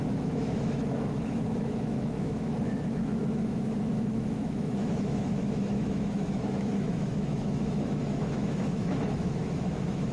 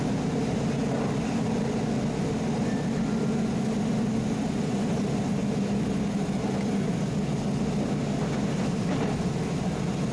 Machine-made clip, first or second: first